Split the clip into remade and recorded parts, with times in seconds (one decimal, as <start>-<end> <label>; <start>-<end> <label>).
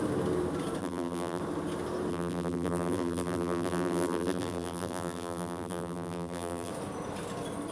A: 0.0-0.8 recorded; 0.8-1.4 remade; 1.4-2.1 recorded; 2.1-6.7 remade; 6.7-7.7 recorded